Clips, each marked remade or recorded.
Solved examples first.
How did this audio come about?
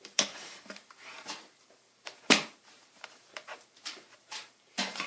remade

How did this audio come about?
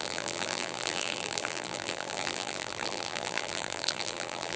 remade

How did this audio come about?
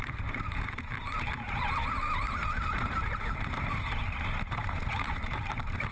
remade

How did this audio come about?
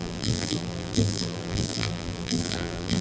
remade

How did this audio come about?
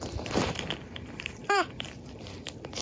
remade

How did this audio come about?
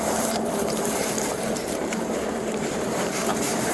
remade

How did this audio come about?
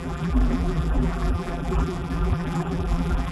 remade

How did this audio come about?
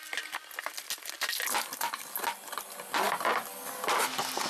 recorded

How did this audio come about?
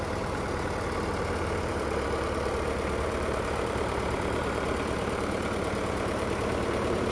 remade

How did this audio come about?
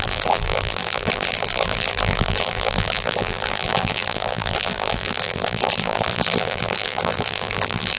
remade